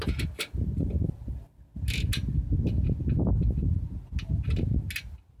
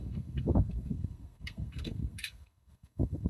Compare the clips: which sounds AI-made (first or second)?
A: second